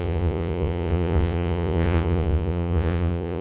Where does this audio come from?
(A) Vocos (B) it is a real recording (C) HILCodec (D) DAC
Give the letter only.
A